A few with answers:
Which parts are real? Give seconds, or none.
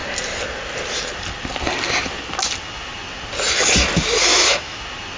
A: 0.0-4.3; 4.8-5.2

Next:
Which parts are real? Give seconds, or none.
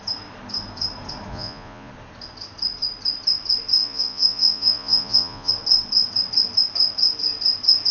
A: 0.0-1.3; 1.9-3.8; 5.5-7.9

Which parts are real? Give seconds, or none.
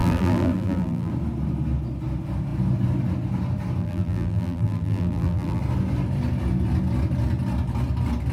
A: 1.1-3.8; 5.6-8.3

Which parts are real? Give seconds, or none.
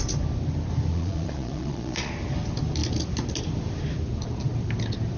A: 0.0-0.9; 2.1-5.2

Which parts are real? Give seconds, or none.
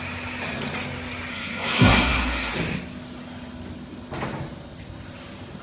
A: 0.0-1.3; 2.5-5.6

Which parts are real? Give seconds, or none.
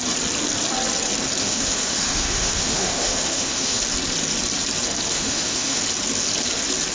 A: 0.0-1.4; 3.8-5.1; 5.8-6.9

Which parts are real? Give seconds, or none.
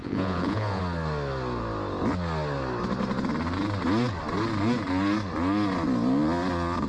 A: 0.8-6.9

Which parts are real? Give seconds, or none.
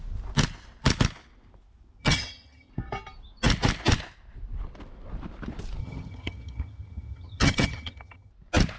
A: 0.0-2.0; 2.7-5.8; 8.3-8.8